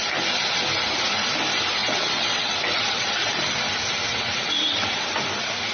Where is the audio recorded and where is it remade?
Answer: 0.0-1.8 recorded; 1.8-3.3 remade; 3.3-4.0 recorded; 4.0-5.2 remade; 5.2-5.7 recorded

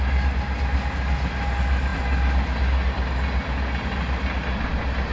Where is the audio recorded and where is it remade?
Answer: 0.0-5.1 recorded

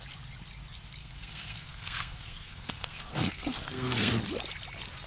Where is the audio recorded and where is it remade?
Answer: 0.0-1.0 recorded; 1.0-4.1 remade; 4.1-5.1 recorded

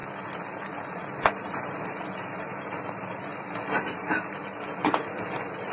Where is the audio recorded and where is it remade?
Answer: 0.0-5.7 recorded

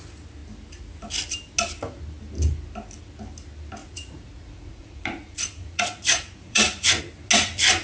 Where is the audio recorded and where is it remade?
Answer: 0.0-3.8 recorded; 3.8-7.0 remade; 7.0-7.8 recorded

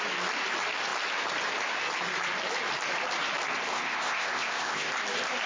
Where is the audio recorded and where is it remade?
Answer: 0.0-3.7 recorded; 3.7-4.9 remade; 4.9-5.5 recorded

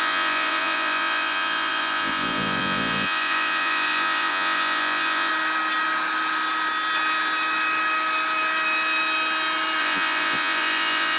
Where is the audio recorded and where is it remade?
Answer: 0.0-5.3 remade; 5.3-9.8 recorded; 9.8-11.2 remade